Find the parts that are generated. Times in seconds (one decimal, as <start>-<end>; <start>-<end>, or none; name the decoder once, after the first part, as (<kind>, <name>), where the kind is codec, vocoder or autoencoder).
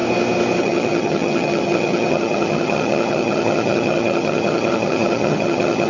0.6-5.9 (vocoder, HiFi-GAN)